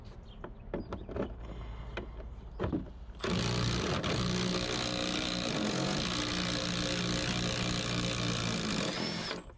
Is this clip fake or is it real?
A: real